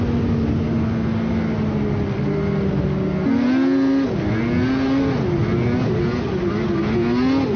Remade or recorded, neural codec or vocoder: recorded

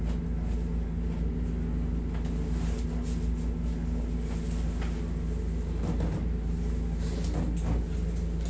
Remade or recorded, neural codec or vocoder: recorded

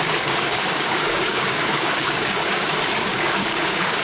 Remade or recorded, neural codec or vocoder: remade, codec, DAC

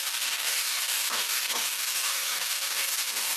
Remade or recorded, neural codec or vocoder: remade, codec, DAC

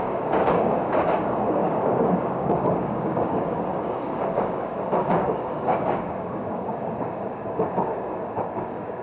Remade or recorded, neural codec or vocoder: remade, codec, DAC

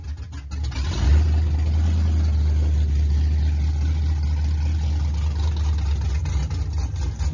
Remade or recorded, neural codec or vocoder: recorded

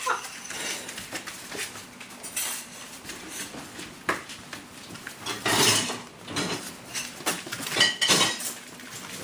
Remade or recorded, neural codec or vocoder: recorded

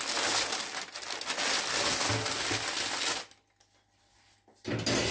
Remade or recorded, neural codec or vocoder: recorded